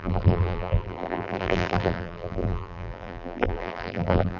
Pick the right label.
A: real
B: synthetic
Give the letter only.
B